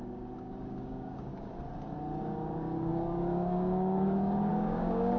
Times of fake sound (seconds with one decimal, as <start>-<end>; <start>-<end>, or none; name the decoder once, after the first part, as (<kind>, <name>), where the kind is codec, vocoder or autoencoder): 0.0-1.5 (codec, DAC); 2.2-5.2